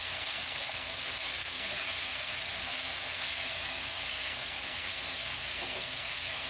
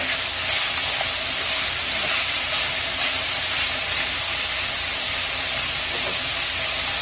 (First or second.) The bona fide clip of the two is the second